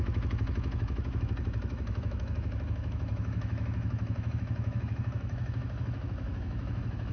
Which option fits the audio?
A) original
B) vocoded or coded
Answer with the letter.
B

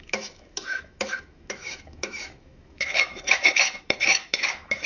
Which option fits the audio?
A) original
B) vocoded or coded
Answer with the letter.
B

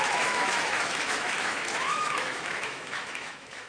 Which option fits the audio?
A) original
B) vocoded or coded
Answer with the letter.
B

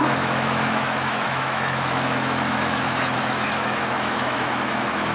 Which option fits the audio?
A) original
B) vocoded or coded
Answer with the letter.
B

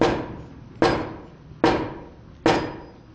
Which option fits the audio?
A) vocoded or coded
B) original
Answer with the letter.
B